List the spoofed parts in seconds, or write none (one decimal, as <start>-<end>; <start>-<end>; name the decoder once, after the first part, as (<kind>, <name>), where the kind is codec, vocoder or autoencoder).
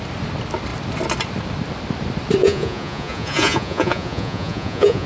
2.4-5.1 (vocoder, Vocos)